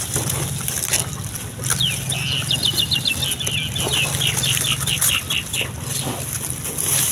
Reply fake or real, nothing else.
real